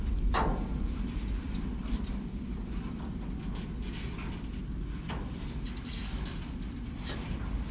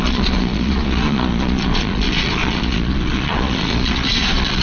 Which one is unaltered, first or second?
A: first